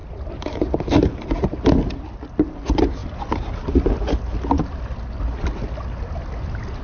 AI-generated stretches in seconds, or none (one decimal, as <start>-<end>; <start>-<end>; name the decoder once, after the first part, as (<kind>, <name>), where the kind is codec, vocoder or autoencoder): 0.0-1.3 (vocoder, BigVGAN v2)